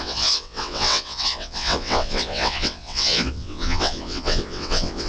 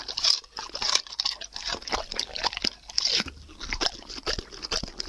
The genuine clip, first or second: second